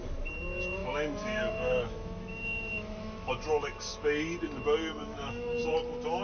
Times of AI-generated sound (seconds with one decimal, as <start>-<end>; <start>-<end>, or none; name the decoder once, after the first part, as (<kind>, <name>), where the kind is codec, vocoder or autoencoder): 0.8-3.3 (autoencoder, DAC-VAE); 5.0-5.6